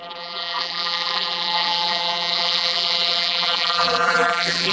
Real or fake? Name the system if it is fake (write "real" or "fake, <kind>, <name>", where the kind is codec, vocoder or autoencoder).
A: fake, vocoder, BigVGAN v2